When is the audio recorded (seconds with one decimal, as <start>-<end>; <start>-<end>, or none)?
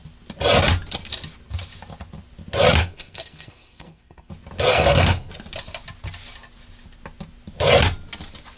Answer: 0.0-2.8; 4.3-4.7; 5.3-8.6